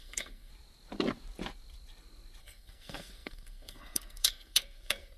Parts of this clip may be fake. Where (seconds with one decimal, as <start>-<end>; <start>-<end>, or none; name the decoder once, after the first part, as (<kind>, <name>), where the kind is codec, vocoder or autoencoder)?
0.0-0.5 (codec, SNAC); 2.4-5.2